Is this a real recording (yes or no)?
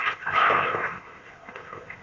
no